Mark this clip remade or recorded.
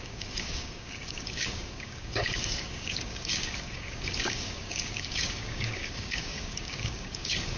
remade